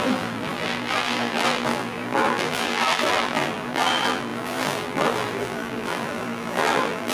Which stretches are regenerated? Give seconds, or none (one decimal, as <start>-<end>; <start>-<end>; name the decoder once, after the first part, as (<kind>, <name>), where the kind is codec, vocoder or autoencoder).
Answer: 0.0-7.1 (vocoder, BigVGAN v2)